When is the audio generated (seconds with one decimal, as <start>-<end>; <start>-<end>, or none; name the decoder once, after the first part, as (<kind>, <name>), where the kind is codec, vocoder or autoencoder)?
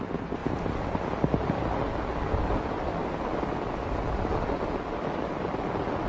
none